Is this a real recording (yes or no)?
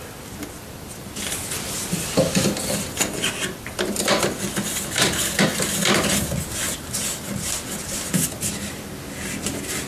yes